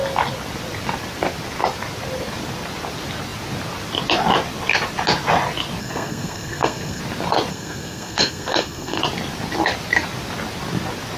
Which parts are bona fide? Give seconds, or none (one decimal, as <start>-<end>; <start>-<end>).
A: 0.0-5.8; 7.0-7.5; 9.0-11.2